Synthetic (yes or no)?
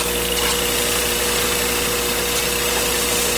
no